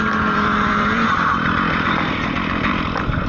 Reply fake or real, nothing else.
fake